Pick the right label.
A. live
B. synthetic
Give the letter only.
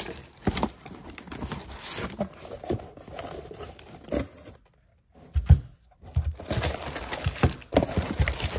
A